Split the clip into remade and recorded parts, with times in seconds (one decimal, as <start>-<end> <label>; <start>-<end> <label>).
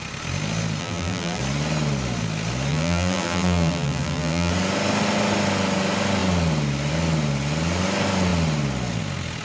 0.0-0.8 recorded; 0.8-1.4 remade; 1.4-2.7 recorded; 2.7-4.5 remade; 4.5-9.4 recorded